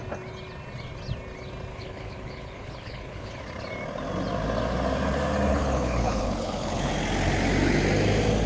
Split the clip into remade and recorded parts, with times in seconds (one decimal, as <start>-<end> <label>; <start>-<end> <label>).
0.0-1.7 recorded; 1.7-3.4 remade; 3.4-5.5 recorded; 5.5-6.9 remade; 6.9-8.5 recorded